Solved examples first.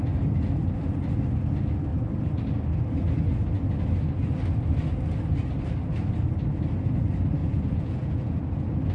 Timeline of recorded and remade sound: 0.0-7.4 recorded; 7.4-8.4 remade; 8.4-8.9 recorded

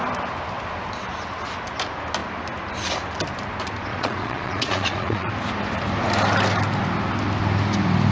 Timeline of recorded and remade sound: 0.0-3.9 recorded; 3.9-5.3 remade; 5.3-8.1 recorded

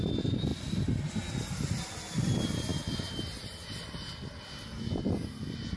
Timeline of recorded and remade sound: 0.0-5.8 recorded

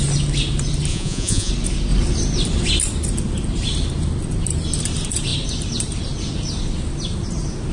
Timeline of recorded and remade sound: 0.0-0.9 recorded; 0.9-1.5 remade; 1.5-7.7 recorded

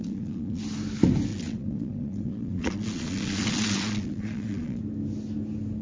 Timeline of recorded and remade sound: 0.0-0.6 remade; 0.6-1.3 recorded; 1.3-4.8 remade; 4.8-5.8 recorded

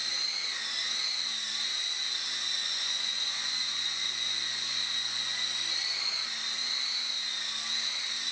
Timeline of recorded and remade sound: 0.0-2.6 recorded; 2.6-5.7 remade; 5.7-8.3 recorded